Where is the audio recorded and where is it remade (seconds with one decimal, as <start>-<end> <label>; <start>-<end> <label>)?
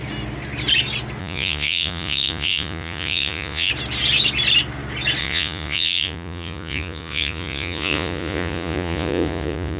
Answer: 0.0-1.2 recorded; 1.2-3.7 remade; 3.7-5.2 recorded; 5.2-9.8 remade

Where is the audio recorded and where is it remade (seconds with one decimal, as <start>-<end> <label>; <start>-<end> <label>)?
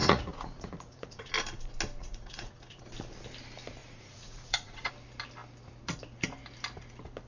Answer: 0.0-1.3 remade; 1.3-2.0 recorded; 2.0-2.8 remade; 2.8-3.8 recorded; 3.8-4.9 remade; 4.9-7.3 recorded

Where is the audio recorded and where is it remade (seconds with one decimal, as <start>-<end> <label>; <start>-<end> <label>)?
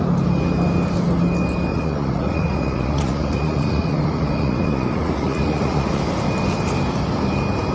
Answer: 0.0-1.7 recorded; 1.7-6.0 remade; 6.0-7.7 recorded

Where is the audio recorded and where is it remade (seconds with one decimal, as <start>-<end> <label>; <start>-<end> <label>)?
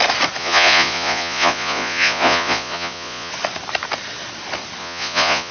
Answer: 0.0-0.4 recorded; 0.4-3.3 remade; 3.3-4.8 recorded; 4.8-5.5 remade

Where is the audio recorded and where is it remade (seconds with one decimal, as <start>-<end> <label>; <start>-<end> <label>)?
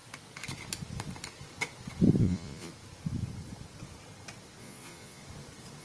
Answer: 0.0-2.2 recorded; 2.2-2.7 remade; 2.7-4.6 recorded; 4.6-5.2 remade; 5.2-5.8 recorded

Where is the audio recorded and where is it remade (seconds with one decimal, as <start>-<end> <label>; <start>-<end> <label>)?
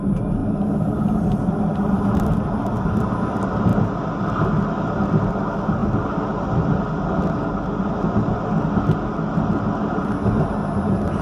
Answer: 0.0-11.2 recorded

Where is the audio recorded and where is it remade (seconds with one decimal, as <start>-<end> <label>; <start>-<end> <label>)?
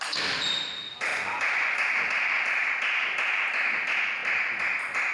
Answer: 0.0-1.1 recorded; 1.1-1.8 remade; 1.8-5.1 recorded